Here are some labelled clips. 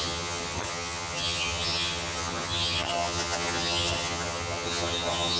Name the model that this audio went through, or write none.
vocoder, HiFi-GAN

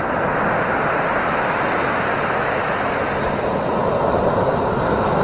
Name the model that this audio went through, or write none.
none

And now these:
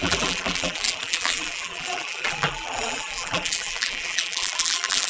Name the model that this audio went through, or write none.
vocoder, BigVGAN v2